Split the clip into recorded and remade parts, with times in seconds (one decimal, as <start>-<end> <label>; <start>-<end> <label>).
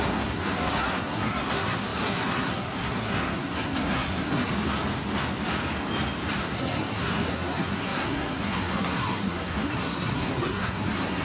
0.0-4.5 remade; 4.5-6.4 recorded; 6.4-11.2 remade